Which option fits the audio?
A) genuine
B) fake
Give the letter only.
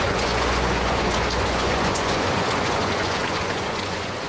B